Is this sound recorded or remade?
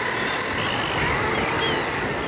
recorded